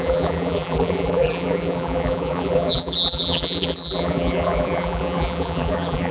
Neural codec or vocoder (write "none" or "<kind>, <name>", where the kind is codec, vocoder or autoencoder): vocoder, BigVGAN v2